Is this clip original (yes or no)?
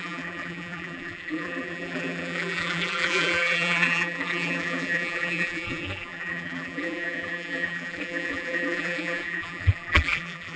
no